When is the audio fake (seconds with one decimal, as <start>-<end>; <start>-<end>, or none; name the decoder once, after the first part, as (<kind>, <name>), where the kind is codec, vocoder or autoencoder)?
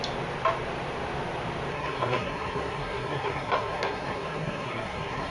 1.7-5.3 (codec, SNAC)